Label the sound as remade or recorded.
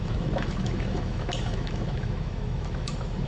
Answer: remade